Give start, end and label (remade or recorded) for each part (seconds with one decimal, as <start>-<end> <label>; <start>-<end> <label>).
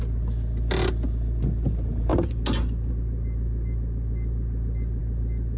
0.0-5.6 recorded